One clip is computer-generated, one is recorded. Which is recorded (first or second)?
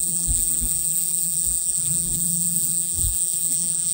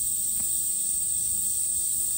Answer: second